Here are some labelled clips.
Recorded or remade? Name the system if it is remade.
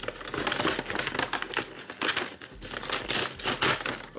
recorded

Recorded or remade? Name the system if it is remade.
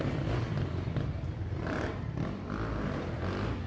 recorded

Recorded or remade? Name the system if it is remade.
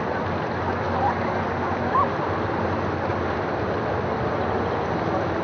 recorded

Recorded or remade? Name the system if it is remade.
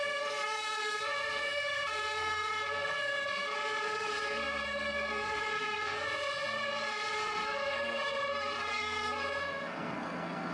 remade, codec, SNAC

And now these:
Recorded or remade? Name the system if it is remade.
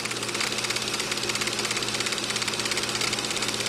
recorded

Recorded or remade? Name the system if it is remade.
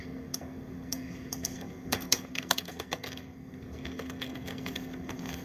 remade, codec, SNAC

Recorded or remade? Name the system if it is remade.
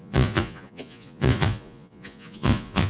remade, vocoder, Vocos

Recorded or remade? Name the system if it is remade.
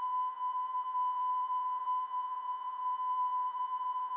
remade, vocoder, BigVGAN v2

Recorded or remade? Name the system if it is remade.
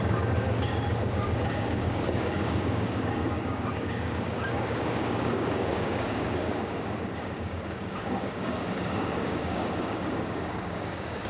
remade, codec, DAC